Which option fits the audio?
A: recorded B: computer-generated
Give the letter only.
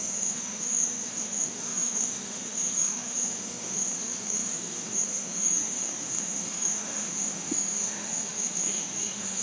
B